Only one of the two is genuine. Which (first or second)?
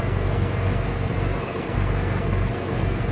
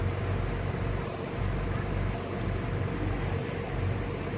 second